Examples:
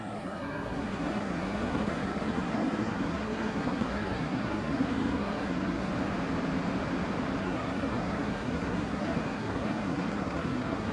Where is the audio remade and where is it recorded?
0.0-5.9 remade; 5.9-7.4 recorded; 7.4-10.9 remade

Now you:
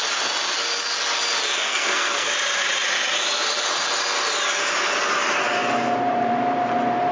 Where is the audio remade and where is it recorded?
0.0-1.6 recorded; 1.6-2.3 remade; 2.3-7.1 recorded

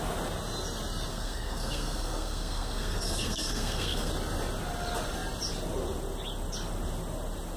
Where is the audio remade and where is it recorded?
0.0-1.1 recorded; 1.1-4.1 remade; 4.1-7.6 recorded

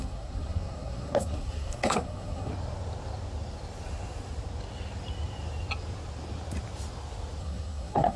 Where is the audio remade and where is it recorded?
0.0-2.5 remade; 2.5-7.4 recorded; 7.4-8.2 remade

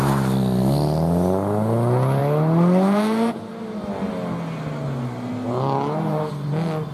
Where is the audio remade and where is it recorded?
0.0-6.9 recorded

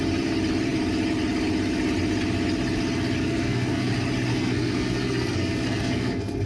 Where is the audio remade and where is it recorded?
0.0-3.2 recorded; 3.2-3.9 remade; 3.9-4.3 recorded; 4.3-6.5 remade

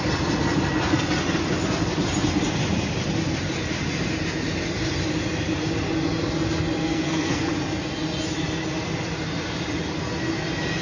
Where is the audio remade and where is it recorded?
0.0-6.8 recorded; 6.8-7.5 remade; 7.5-10.8 recorded

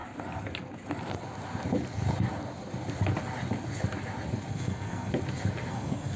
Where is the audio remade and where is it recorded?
0.0-4.5 recorded; 4.5-5.1 remade; 5.1-5.7 recorded; 5.7-6.2 remade